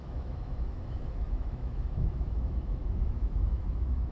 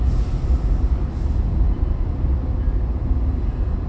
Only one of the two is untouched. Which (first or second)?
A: second